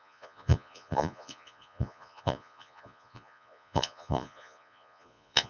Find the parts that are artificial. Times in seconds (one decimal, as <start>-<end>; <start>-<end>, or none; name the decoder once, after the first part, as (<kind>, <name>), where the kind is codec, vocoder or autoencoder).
0.0-5.5 (vocoder, Vocos)